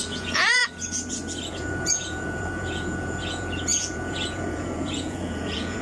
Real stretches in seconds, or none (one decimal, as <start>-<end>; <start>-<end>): 0.6-1.5